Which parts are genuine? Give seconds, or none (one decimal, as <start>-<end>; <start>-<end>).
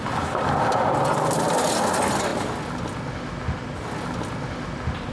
0.0-5.1